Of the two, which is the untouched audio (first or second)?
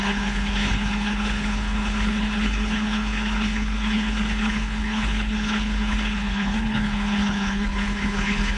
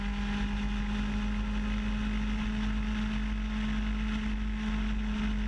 second